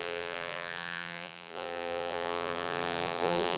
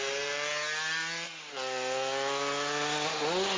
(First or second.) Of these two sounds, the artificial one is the first